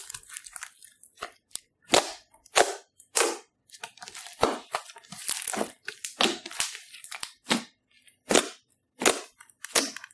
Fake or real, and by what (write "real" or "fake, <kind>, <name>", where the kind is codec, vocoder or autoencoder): real